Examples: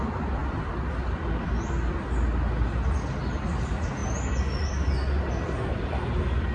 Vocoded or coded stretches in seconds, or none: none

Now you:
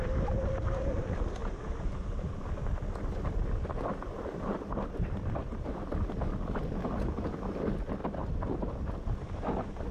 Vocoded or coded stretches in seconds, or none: 1.4-5.8